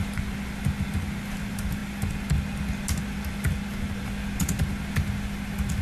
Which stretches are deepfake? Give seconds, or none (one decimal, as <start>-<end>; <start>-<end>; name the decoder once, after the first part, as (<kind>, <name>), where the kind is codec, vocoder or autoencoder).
none